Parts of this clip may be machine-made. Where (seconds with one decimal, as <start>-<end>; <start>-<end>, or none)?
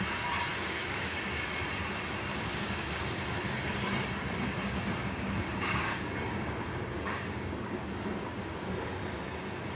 0.5-1.5; 2.3-3.0; 4.6-8.7